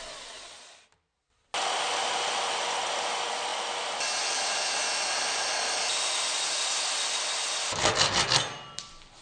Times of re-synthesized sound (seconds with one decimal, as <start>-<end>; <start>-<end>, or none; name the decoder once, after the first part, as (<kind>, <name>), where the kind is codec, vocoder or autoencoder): none

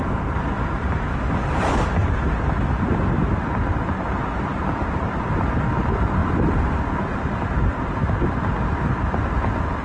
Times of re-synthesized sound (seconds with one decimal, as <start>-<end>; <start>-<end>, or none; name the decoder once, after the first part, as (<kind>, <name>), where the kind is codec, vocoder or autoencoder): 4.5-5.3 (vocoder, BigVGAN v2)

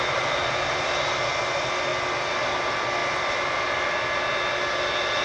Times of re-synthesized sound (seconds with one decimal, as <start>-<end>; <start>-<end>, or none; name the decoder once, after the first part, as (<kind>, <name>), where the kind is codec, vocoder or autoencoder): none

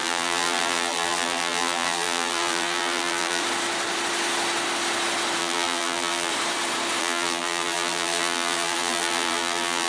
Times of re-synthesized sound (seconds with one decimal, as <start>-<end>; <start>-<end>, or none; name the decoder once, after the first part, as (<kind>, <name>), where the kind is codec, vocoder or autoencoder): 0.0-3.4 (vocoder, BigVGAN v2); 5.4-6.3; 7.0-9.9

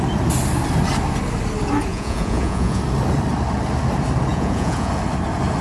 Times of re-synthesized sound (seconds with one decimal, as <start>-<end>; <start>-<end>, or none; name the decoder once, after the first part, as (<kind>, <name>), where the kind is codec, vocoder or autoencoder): 1.9-2.8 (vocoder, Vocos); 4.3-4.9

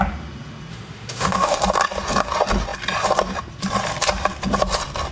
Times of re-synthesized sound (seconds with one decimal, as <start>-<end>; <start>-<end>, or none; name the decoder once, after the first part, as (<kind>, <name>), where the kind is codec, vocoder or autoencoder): 0.7-1.6 (autoencoder, DAC-VAE)